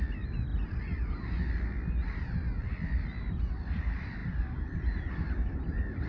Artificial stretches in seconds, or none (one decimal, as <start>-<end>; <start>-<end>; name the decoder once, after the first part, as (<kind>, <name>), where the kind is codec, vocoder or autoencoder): 0.0-0.5 (vocoder, BigVGAN v2); 3.5-6.1